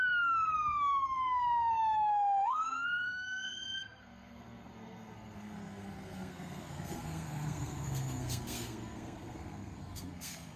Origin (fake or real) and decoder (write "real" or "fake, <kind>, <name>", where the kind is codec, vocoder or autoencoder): fake, codec, SNAC